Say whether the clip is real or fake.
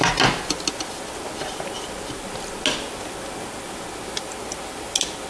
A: real